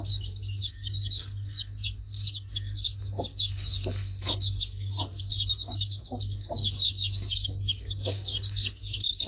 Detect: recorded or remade remade